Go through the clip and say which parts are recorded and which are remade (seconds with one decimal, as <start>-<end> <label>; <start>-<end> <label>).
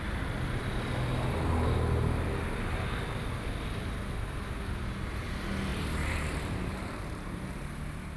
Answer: 0.0-5.7 recorded; 5.7-7.6 remade; 7.6-8.2 recorded